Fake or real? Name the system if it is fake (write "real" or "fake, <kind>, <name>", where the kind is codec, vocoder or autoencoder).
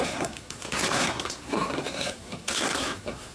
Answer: fake, codec, SNAC